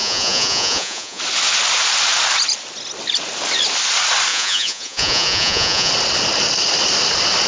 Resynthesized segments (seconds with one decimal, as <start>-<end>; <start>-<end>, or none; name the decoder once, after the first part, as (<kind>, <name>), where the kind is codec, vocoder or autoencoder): 0.0-1.2 (vocoder, Vocos); 4.3-5.9